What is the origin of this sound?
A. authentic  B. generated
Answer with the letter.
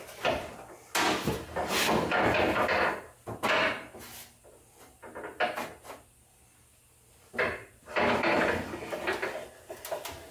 A